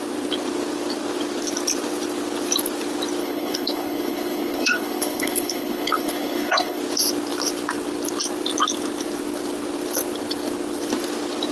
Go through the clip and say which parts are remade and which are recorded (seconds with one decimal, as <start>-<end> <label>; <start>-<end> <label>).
0.0-3.2 recorded; 3.2-6.8 remade; 6.8-11.5 recorded